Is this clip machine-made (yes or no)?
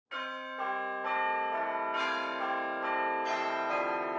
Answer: no